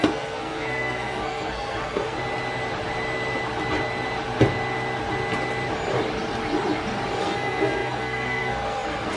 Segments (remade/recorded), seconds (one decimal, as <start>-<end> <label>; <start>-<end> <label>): 0.0-2.2 remade; 2.2-7.2 recorded; 7.2-9.2 remade